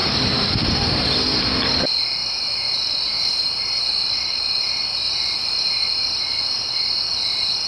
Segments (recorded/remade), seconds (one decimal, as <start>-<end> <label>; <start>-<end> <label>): 0.0-2.2 recorded; 2.2-6.8 remade; 6.8-7.7 recorded